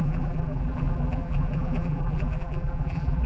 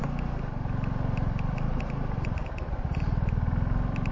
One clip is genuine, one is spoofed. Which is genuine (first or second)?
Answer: second